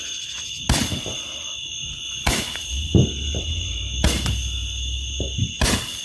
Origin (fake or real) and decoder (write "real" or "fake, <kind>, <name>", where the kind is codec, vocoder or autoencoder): real